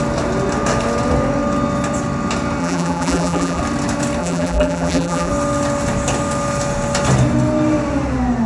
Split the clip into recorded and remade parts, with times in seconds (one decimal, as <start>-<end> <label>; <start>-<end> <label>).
0.0-2.6 recorded; 2.6-3.6 remade; 3.6-4.2 recorded; 4.2-5.3 remade; 5.3-8.5 recorded